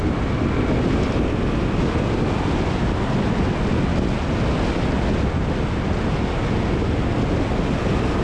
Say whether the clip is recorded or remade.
recorded